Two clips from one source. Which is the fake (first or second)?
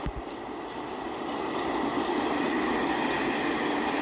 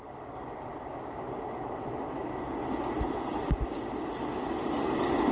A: first